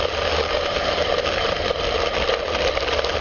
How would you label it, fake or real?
real